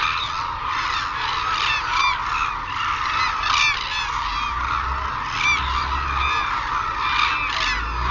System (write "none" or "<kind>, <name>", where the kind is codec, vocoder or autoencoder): none